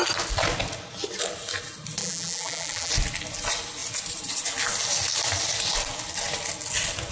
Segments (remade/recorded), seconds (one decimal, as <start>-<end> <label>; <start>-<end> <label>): 0.0-2.0 recorded; 2.0-2.9 remade; 2.9-7.1 recorded